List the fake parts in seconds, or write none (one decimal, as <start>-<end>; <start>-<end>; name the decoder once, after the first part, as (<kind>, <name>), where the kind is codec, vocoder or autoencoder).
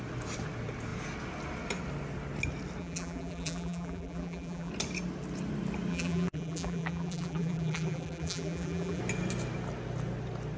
2.8-4.7 (vocoder, BigVGAN v2); 5.9-9.0